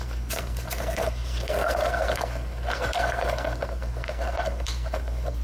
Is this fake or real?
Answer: fake